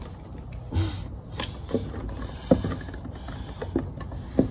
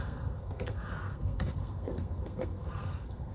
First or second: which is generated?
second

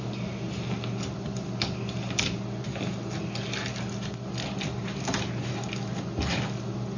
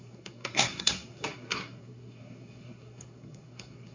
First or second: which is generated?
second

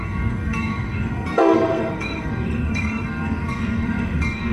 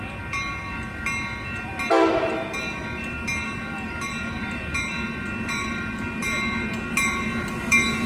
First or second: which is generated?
first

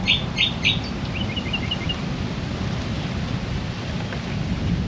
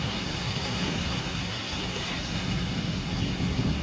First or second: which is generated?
second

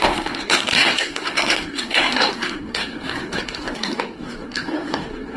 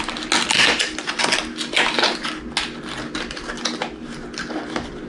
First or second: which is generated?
first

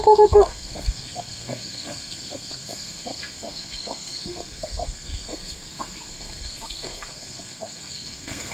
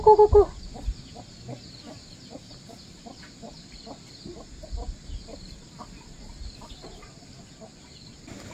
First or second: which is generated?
first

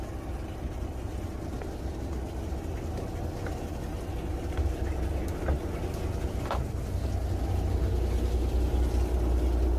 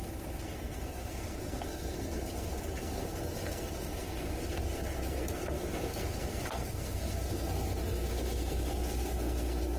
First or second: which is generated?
second